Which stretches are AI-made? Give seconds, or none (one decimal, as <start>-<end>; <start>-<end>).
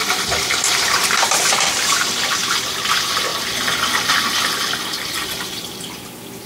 0.0-3.3; 6.0-6.5